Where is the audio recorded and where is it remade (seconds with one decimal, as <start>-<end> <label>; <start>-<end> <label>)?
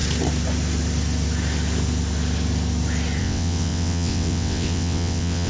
0.0-3.2 recorded; 3.2-5.5 remade